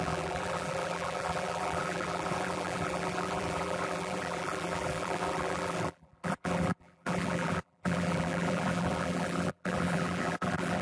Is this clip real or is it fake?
fake